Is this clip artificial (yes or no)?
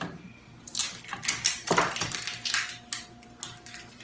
no